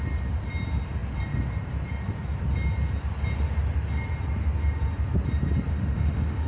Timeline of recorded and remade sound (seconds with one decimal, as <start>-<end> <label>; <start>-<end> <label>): 0.0-5.7 recorded; 5.7-6.5 remade